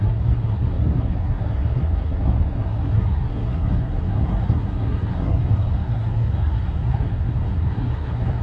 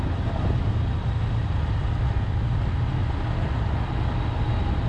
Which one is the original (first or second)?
second